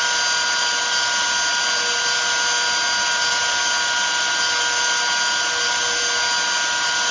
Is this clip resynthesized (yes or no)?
no